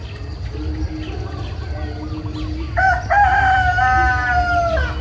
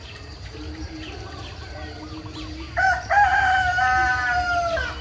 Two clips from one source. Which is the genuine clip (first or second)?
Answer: first